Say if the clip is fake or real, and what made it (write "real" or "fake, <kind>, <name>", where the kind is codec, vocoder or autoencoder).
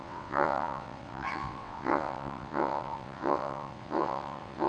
fake, vocoder, WaveNeXt